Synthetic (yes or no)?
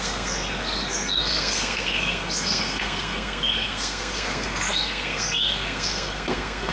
yes